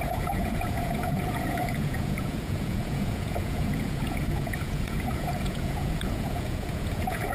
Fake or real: fake